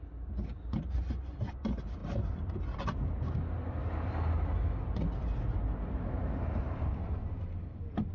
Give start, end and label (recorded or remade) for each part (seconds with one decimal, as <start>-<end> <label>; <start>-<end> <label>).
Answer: 0.0-2.0 recorded; 2.0-2.6 remade; 2.6-8.1 recorded